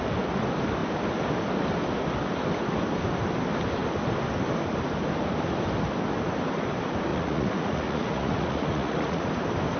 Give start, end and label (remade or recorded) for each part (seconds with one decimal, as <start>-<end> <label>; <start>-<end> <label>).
0.0-7.1 recorded; 7.1-9.3 remade; 9.3-9.8 recorded